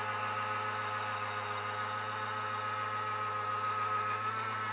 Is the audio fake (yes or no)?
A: no